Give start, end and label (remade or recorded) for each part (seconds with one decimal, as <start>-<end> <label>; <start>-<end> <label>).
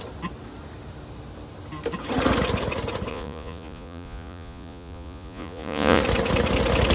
0.0-3.1 recorded; 3.1-6.0 remade; 6.0-6.9 recorded